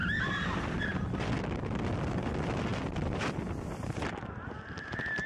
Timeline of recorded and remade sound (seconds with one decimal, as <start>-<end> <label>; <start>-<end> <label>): 0.0-2.7 recorded; 2.7-4.1 remade; 4.1-5.3 recorded